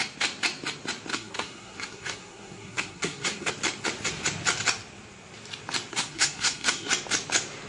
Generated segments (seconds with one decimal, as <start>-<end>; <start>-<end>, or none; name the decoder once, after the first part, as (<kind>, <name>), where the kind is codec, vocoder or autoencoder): 1.1-3.5 (codec, SNAC); 5.9-6.9